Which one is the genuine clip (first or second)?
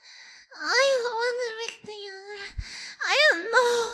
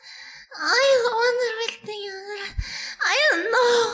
second